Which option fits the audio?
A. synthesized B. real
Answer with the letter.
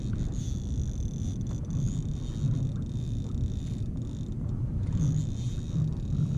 B